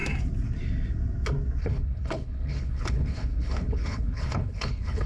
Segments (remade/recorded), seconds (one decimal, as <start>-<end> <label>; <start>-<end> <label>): 0.0-1.6 recorded; 1.6-5.1 remade